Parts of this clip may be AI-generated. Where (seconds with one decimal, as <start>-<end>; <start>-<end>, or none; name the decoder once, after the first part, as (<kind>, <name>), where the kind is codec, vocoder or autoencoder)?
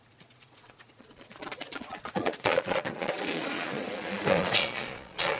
0.0-5.4 (vocoder, Vocos)